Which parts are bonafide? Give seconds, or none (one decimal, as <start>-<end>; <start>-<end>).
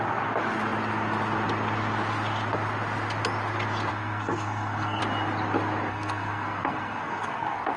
0.0-3.9; 5.0-5.9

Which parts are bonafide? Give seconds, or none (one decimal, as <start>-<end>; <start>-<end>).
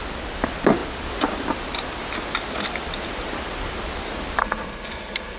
0.0-4.4